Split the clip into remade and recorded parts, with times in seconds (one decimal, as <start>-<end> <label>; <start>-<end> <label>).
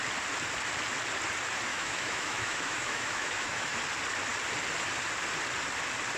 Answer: 0.0-1.7 recorded; 1.7-3.8 remade; 3.8-6.2 recorded